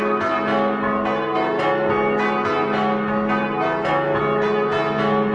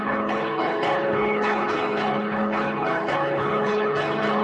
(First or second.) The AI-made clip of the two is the second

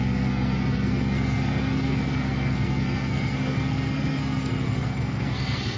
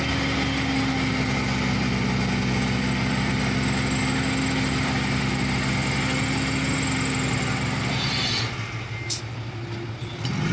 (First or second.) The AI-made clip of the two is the first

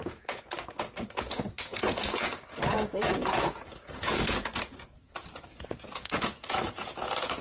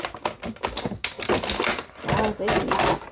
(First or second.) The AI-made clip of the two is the first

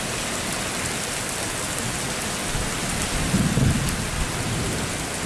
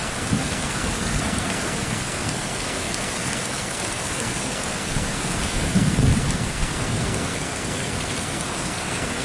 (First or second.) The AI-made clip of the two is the second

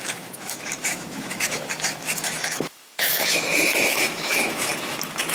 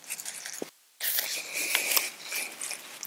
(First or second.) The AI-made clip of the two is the first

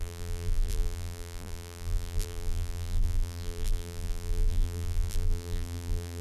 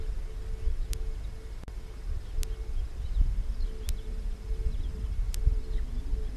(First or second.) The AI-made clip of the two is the first